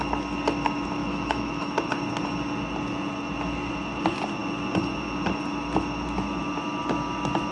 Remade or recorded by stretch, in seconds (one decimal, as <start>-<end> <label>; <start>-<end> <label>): 0.0-1.0 recorded; 1.0-1.7 remade; 1.7-7.5 recorded